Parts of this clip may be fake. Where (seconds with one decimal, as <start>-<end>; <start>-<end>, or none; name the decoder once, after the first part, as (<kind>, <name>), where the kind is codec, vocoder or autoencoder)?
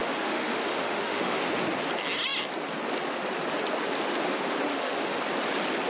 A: 0.0-1.4 (autoencoder, DAC-VAE); 4.7-5.2